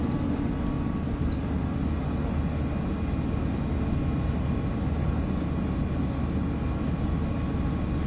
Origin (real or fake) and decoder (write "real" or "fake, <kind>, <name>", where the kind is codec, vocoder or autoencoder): real